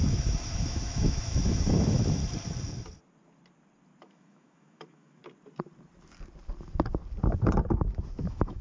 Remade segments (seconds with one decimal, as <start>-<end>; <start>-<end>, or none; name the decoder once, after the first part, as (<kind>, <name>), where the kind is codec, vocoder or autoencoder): 0.0-2.2 (autoencoder, DAC-VAE); 4.0-5.2; 8.2-8.6